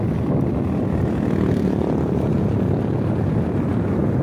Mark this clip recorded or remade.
recorded